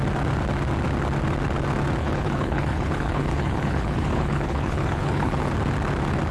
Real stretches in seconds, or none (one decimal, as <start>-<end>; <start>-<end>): 0.0-2.0; 5.5-6.3